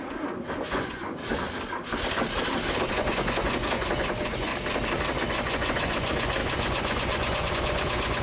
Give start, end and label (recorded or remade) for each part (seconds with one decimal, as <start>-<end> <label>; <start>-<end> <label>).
0.0-0.6 recorded; 0.6-1.2 remade; 1.2-2.9 recorded; 2.9-4.5 remade; 4.5-5.2 recorded; 5.2-8.2 remade